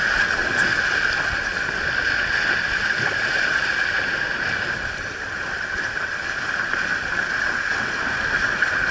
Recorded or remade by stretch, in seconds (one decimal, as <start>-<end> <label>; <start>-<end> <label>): 0.0-8.9 recorded